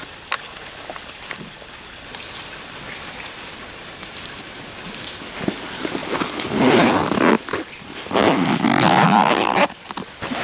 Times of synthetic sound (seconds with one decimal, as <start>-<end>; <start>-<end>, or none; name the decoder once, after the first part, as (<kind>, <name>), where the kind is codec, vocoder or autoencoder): none